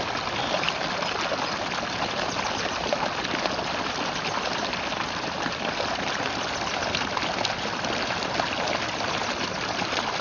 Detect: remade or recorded recorded